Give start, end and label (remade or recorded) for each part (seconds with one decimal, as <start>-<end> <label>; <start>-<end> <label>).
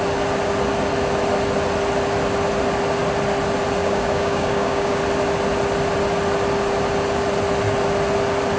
0.0-3.8 recorded; 3.8-5.0 remade; 5.0-8.6 recorded